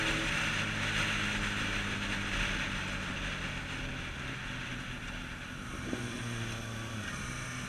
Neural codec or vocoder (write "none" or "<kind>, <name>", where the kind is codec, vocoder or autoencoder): none